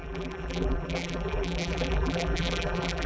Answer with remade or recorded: remade